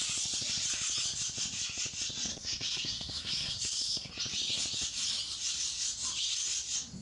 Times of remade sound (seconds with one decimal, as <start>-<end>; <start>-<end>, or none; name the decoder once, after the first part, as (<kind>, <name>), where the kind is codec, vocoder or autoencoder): 2.3-4.1 (codec, SNAC)